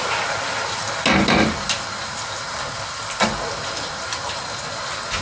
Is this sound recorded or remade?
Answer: recorded